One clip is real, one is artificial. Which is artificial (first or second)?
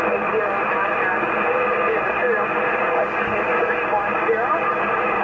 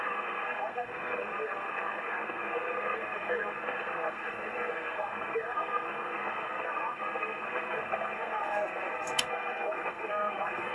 second